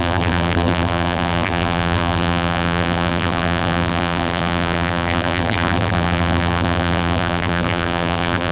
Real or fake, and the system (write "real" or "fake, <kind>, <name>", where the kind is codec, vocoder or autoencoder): fake, vocoder, BigVGAN v2